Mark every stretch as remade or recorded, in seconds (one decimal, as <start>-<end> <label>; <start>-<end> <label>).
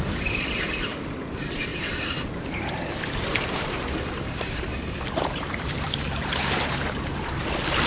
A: 0.0-1.7 recorded; 1.7-6.4 remade; 6.4-7.9 recorded